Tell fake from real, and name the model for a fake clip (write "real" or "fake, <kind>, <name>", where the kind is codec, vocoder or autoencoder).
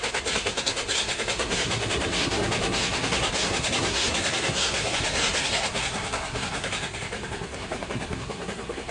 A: fake, codec, SNAC